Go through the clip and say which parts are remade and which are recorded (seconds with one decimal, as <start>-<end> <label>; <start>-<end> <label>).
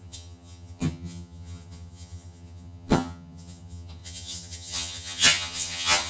0.0-6.1 remade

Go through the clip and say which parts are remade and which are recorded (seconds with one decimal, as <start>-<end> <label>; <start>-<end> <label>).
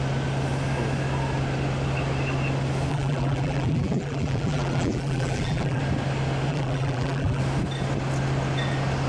0.0-2.9 recorded; 2.9-5.8 remade; 5.8-6.5 recorded; 6.5-7.4 remade; 7.4-9.1 recorded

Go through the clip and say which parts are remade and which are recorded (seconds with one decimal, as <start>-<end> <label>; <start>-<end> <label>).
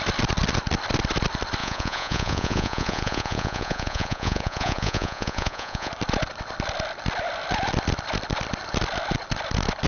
0.0-1.6 recorded; 1.6-5.9 remade; 5.9-9.9 recorded